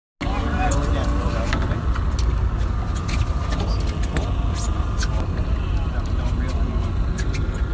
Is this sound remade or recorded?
recorded